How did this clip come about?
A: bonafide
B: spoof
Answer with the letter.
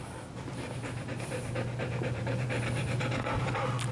B